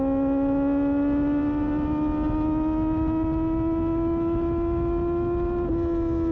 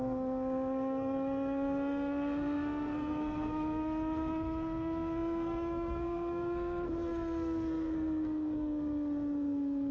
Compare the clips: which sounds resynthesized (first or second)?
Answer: second